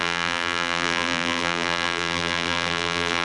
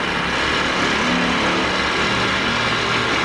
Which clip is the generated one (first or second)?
first